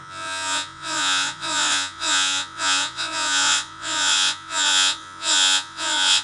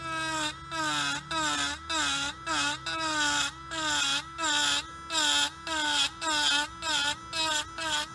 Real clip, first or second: second